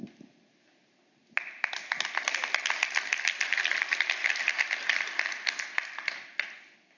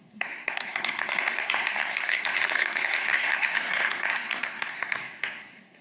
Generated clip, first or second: second